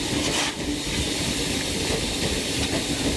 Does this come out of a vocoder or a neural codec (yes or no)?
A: yes